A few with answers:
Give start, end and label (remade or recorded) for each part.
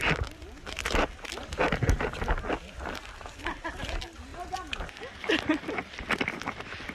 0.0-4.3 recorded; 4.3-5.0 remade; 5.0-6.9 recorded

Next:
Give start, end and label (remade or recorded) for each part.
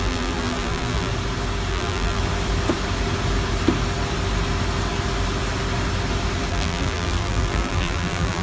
0.0-1.1 remade; 1.1-1.7 recorded; 1.7-2.2 remade; 2.2-6.5 recorded; 6.5-8.4 remade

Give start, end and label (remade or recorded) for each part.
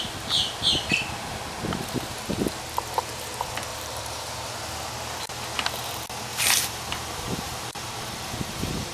0.0-3.7 recorded; 3.7-4.5 remade; 4.5-6.3 recorded; 6.3-8.9 remade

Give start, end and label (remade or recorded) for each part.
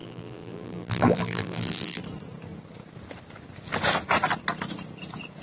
0.0-2.0 remade; 2.0-5.4 recorded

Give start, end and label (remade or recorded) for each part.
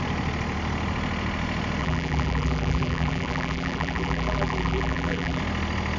0.0-1.8 recorded; 1.8-5.4 remade; 5.4-6.0 recorded